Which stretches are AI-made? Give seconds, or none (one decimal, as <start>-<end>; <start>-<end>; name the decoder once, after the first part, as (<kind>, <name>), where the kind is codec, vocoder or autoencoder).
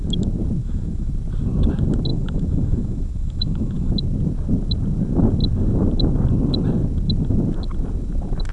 0.6-1.1 (autoencoder, DAC-VAE); 2.1-3.9